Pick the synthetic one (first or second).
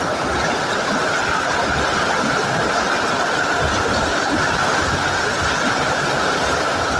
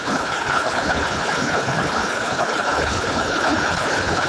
second